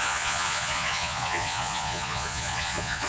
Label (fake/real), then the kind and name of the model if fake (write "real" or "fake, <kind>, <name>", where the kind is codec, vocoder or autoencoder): fake, vocoder, Vocos